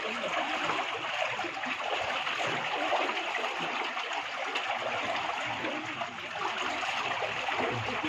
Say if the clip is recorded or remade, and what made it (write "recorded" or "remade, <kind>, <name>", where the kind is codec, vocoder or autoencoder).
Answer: recorded